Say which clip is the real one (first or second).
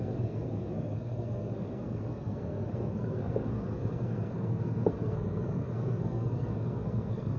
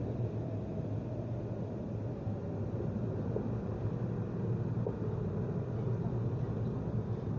second